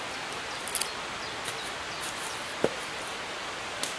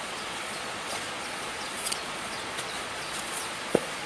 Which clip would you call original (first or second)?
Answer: first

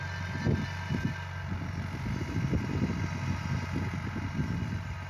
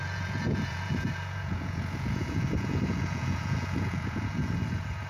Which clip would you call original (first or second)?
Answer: first